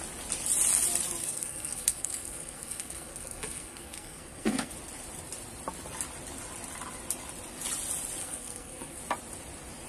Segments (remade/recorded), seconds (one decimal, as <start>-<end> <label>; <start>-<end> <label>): 0.0-1.2 recorded; 1.2-4.7 remade; 4.7-8.2 recorded; 8.2-9.0 remade; 9.0-9.9 recorded